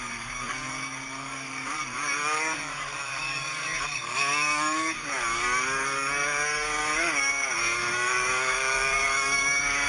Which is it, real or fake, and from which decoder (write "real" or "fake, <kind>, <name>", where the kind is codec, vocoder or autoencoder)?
fake, codec, DAC